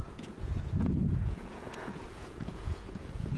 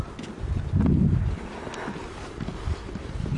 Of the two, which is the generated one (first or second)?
first